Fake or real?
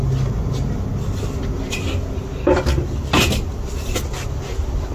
real